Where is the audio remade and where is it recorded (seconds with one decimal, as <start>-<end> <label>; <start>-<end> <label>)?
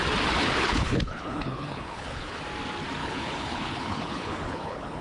0.0-0.4 recorded; 0.4-2.4 remade; 2.4-3.0 recorded; 3.0-5.0 remade